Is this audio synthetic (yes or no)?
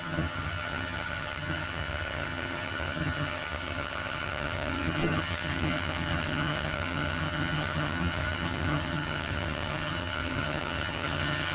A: yes